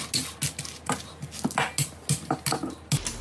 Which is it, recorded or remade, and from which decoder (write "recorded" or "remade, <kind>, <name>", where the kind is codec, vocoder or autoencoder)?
recorded